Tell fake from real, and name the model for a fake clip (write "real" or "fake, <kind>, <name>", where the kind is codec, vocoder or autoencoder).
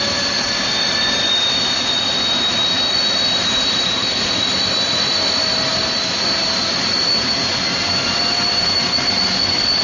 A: real